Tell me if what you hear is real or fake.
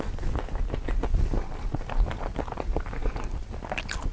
real